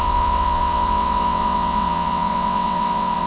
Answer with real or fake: fake